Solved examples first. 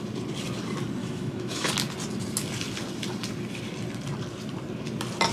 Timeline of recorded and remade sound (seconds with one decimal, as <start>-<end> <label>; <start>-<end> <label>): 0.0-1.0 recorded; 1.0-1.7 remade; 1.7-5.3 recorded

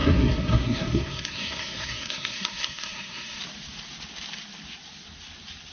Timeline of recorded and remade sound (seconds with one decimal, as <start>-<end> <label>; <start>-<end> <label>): 0.0-3.4 remade; 3.4-5.7 recorded

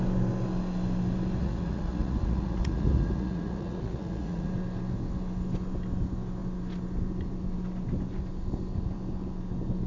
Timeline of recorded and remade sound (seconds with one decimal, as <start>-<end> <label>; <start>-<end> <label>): 0.0-1.4 recorded; 1.4-4.5 remade; 4.5-9.9 recorded

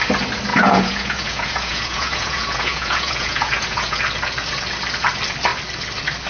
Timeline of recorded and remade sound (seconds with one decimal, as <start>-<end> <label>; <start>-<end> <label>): 0.0-0.5 recorded; 0.5-4.0 remade; 4.0-6.3 recorded